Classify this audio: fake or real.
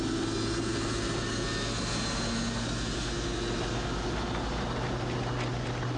real